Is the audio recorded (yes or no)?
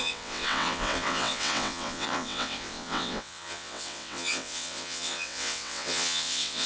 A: no